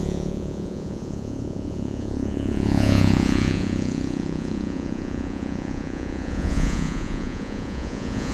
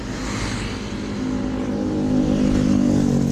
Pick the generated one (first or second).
first